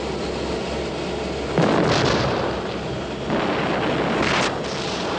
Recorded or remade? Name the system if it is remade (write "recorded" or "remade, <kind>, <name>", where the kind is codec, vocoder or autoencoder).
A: recorded